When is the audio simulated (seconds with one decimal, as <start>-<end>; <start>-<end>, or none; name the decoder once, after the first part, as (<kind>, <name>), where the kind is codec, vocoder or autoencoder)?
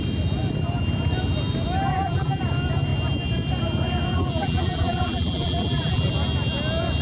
1.9-2.4 (vocoder, BigVGAN v2); 4.1-6.1